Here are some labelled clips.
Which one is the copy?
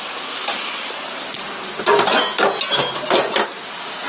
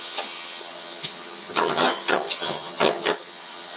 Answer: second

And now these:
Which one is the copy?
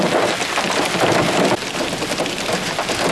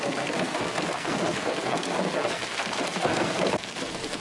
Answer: second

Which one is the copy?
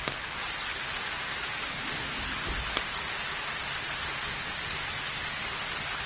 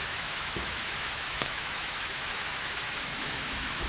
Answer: second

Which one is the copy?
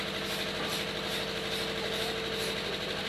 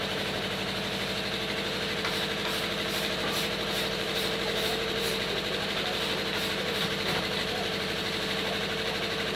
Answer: second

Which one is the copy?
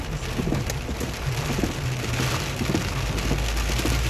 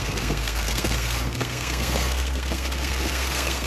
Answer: second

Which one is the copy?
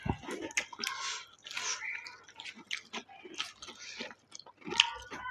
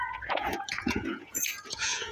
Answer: second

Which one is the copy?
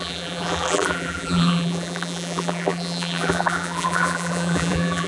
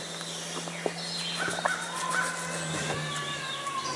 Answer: first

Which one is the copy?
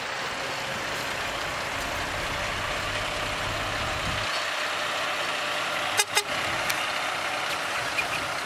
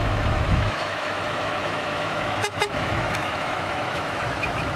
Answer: second